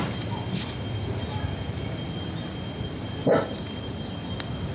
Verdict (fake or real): real